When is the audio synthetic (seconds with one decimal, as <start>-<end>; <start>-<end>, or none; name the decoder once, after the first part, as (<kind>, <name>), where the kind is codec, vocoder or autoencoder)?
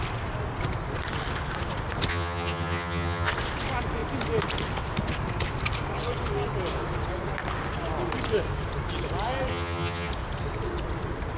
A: 2.1-3.3 (vocoder, HiFi-GAN); 9.5-10.1